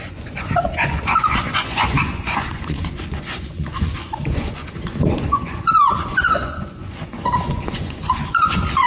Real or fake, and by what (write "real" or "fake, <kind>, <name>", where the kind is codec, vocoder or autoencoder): fake, vocoder, Vocos